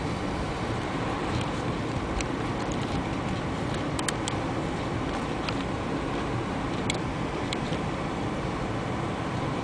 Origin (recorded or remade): remade